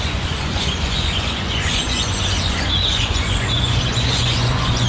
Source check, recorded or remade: remade